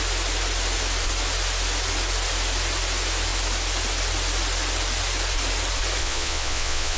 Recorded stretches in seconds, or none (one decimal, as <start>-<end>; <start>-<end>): 0.0-6.0